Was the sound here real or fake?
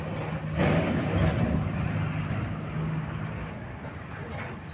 real